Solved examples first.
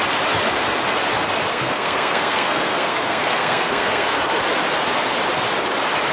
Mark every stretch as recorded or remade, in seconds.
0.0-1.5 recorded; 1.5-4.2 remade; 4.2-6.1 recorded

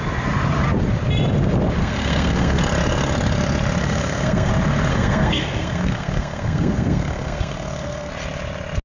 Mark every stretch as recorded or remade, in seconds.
0.0-1.8 recorded; 1.8-2.6 remade; 2.6-3.8 recorded; 3.8-4.5 remade; 4.5-4.9 recorded; 4.9-8.1 remade; 8.1-8.8 recorded

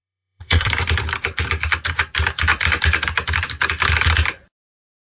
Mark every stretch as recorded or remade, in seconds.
0.0-0.7 remade; 0.7-5.2 recorded